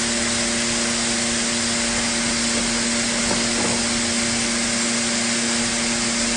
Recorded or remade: recorded